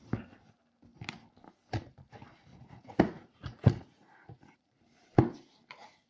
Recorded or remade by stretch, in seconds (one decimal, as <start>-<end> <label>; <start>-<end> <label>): 0.0-2.5 recorded; 2.5-4.8 remade; 4.8-6.1 recorded